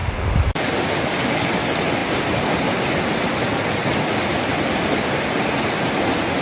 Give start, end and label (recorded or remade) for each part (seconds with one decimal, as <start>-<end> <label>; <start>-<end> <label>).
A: 0.0-1.5 remade; 1.5-6.4 recorded